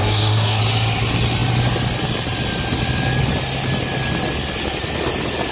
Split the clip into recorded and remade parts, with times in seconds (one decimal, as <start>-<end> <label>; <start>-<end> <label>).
0.0-0.6 remade; 0.6-5.5 recorded